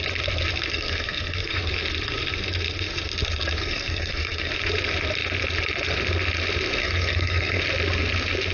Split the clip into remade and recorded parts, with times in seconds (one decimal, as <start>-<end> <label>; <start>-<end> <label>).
0.0-0.7 recorded; 0.7-1.6 remade; 1.6-3.6 recorded; 3.6-4.5 remade; 4.5-6.8 recorded; 6.8-7.6 remade; 7.6-8.5 recorded